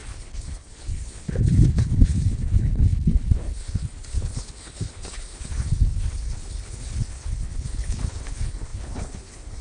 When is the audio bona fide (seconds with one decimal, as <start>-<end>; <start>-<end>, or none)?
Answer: none